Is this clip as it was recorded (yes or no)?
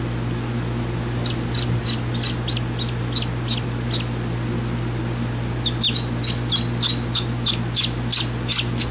yes